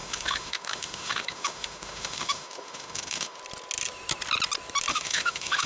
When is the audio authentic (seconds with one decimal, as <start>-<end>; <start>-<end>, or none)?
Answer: 3.4-4.9